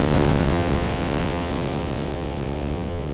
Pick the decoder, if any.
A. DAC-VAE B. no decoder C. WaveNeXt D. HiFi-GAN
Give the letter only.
C